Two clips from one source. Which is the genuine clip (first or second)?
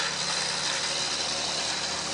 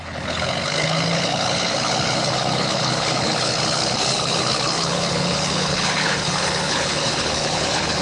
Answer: first